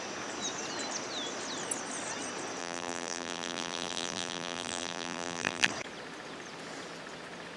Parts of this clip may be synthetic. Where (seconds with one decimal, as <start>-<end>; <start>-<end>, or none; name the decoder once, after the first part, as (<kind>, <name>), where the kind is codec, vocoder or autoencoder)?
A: 2.6-5.7 (vocoder, BigVGAN v2)